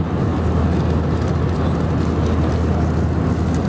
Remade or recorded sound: recorded